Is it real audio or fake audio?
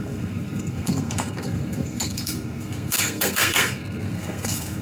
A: fake